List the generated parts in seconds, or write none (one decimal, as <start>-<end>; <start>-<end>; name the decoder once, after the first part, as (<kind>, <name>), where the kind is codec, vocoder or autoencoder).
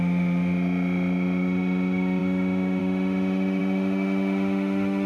0.0-5.1 (autoencoder, DAC-VAE)